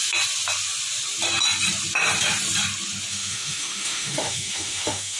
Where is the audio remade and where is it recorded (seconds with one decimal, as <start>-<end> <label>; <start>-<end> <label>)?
0.0-3.1 recorded; 3.1-5.2 remade